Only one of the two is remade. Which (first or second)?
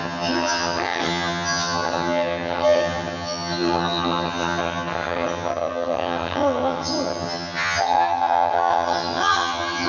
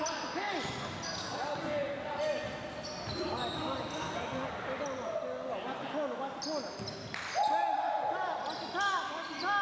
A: first